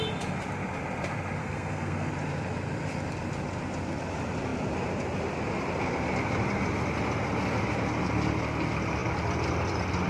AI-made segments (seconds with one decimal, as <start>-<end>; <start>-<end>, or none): 1.4-2.1